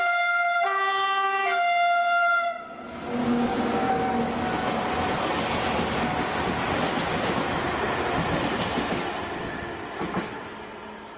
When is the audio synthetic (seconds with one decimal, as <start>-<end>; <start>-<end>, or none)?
3.2-3.9